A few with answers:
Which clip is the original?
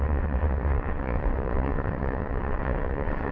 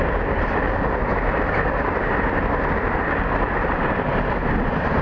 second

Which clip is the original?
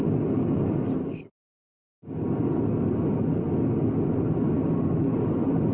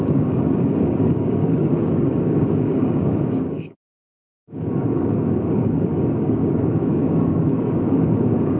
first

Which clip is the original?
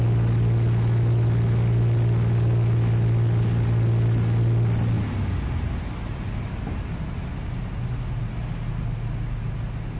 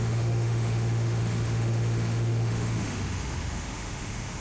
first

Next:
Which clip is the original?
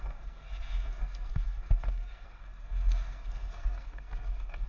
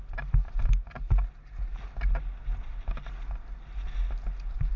second